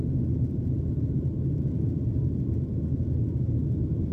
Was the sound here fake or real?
real